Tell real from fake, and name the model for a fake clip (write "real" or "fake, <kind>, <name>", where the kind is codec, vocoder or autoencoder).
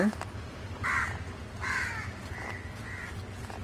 real